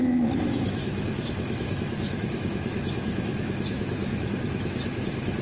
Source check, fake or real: fake